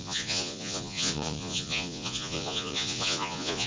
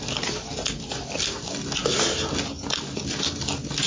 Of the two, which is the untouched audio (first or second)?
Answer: second